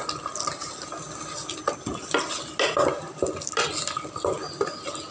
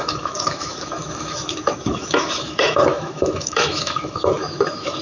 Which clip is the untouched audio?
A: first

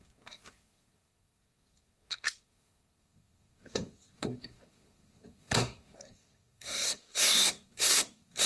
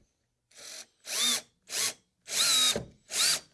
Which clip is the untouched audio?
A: second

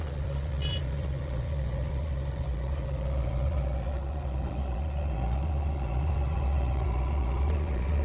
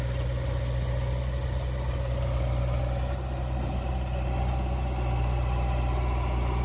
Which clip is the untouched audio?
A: second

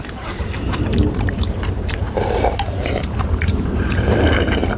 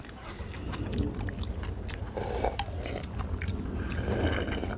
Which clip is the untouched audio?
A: second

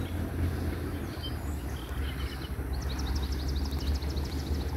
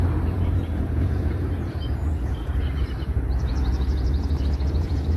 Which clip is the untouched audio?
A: first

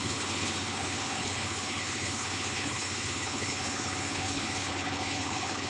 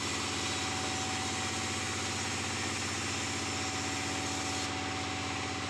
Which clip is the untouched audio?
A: second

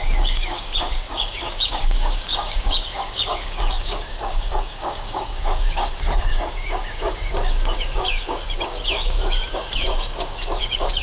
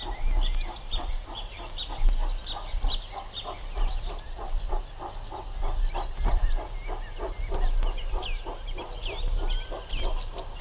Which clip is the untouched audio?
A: second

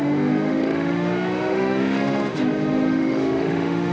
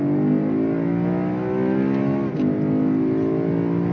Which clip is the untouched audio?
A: second